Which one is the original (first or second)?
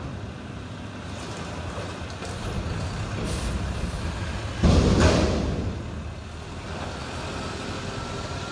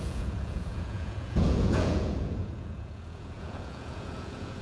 first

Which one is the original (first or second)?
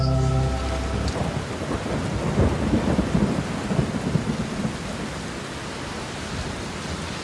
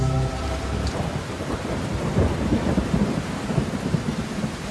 first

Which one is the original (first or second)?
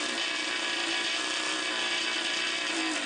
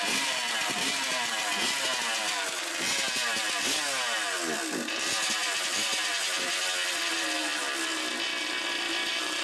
second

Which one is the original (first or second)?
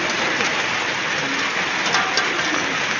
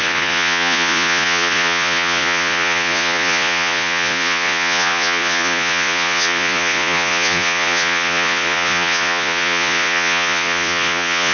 first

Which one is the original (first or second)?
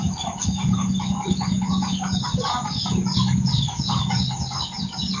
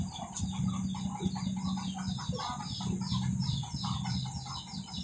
second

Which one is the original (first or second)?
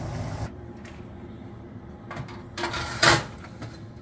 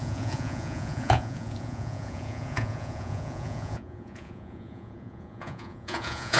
first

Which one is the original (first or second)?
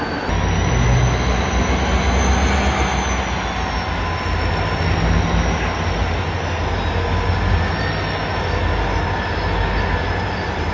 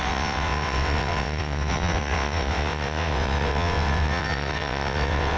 first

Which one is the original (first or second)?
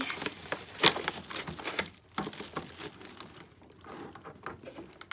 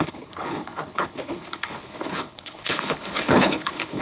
first